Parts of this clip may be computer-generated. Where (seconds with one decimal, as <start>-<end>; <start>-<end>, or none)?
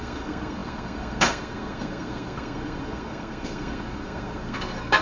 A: 0.0-5.0